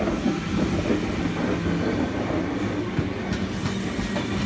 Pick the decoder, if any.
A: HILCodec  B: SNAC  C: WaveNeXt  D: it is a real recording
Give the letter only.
D